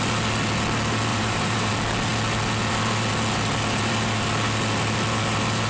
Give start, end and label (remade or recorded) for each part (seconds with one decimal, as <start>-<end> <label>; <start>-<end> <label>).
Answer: 0.0-1.1 recorded; 1.1-1.7 remade; 1.7-5.7 recorded